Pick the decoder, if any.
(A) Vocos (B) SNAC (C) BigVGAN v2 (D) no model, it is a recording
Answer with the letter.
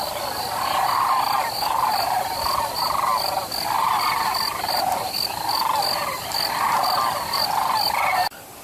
D